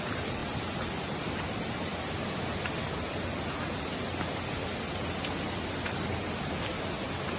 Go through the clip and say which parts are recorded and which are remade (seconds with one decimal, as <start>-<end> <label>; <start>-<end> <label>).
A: 0.0-7.4 recorded